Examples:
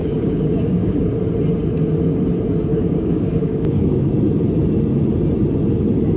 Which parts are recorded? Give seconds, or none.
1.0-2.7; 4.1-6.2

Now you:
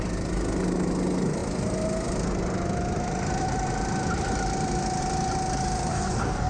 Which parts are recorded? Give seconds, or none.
0.0-5.9

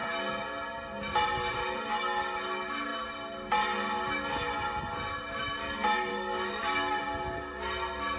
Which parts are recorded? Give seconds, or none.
0.0-6.1; 7.0-8.2

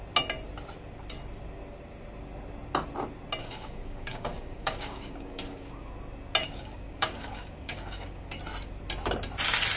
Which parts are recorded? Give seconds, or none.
0.0-3.4; 5.8-6.4; 8.4-9.8

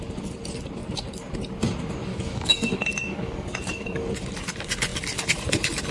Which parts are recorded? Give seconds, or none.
0.0-2.1; 4.1-5.9